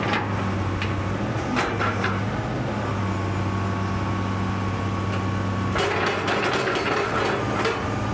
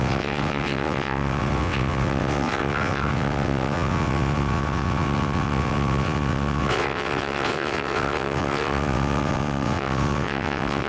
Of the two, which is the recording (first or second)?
first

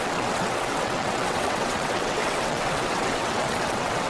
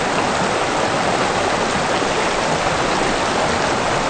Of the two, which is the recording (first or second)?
second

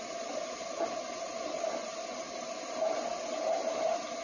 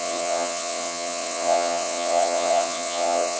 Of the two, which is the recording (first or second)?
first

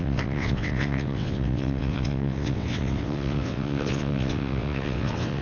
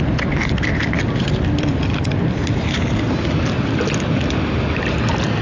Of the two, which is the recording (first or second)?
second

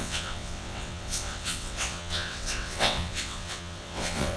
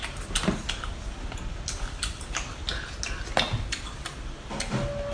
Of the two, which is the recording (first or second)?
second